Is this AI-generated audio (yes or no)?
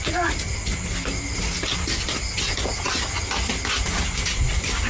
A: no